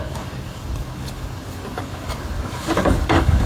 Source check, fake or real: fake